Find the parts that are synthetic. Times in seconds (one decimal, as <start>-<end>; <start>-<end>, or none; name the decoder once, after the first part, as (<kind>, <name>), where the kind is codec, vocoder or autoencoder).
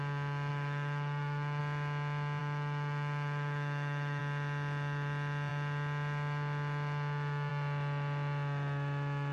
0.5-1.6 (autoencoder, DAC-VAE); 2.4-4.2